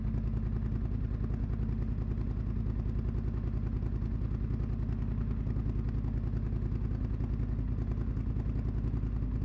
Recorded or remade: recorded